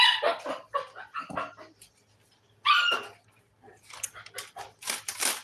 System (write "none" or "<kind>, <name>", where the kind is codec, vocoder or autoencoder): none